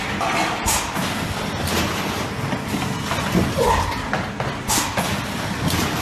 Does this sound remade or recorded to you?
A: recorded